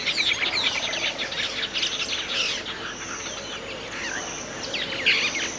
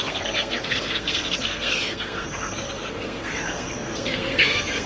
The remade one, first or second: second